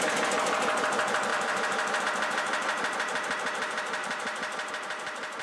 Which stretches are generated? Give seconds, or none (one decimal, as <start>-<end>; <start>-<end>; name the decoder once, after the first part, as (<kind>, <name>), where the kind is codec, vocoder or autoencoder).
1.3-2.0 (vocoder, BigVGAN v2); 4.0-4.7

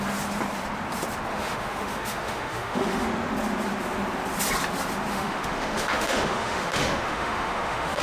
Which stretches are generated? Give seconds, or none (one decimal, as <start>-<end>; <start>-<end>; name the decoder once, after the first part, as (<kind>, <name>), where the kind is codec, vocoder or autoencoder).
1.3-3.1 (autoencoder, DAC-VAE); 5.1-8.0

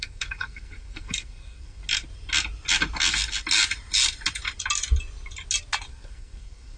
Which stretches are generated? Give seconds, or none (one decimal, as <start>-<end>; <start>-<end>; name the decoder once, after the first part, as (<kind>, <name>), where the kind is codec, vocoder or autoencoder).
0.0-1.8 (codec, SNAC); 5.9-6.8

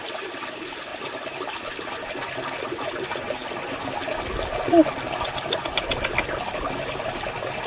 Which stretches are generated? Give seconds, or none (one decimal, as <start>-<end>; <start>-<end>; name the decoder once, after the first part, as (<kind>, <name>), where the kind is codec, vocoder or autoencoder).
0.9-2.1 (vocoder, BigVGAN v2)

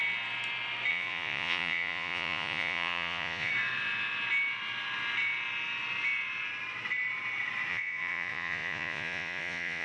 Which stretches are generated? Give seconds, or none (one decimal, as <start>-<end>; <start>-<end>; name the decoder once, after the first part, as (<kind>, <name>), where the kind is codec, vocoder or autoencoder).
0.9-3.5 (vocoder, Vocos); 7.7-9.8

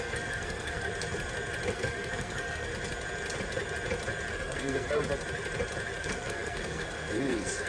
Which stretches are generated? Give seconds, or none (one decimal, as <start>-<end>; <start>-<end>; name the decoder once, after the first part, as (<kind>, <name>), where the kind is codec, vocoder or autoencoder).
0.0-0.9 (codec, SNAC); 1.7-2.7; 4.3-5.0; 6.0-7.7

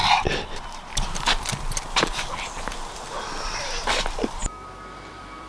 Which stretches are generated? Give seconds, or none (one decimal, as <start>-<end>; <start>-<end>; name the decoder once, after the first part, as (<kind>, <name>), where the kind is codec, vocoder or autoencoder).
2.1-5.5 (vocoder, BigVGAN v2)

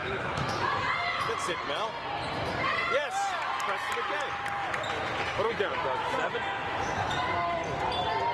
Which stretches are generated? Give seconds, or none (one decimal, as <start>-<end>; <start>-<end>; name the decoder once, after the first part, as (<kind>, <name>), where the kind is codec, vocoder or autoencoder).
0.0-0.6 (autoencoder, DAC-VAE); 6.6-7.1